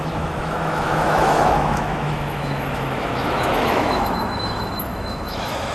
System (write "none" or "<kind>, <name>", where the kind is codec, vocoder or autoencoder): autoencoder, DAC-VAE